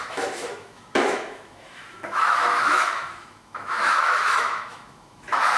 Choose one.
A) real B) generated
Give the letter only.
B